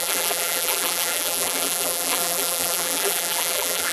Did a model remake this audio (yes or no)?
yes